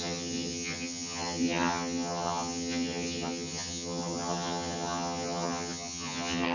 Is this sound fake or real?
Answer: fake